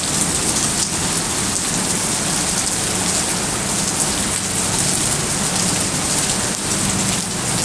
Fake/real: real